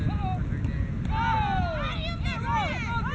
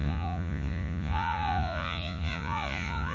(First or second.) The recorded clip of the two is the first